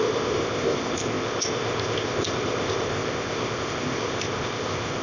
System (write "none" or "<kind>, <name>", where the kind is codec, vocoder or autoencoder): codec, ZipCodec